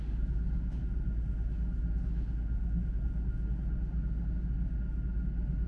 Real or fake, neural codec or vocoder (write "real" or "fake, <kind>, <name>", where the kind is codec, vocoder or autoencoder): real